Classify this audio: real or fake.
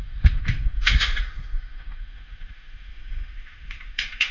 fake